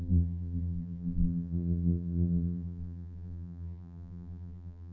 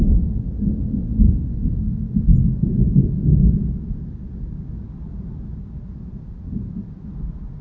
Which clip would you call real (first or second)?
second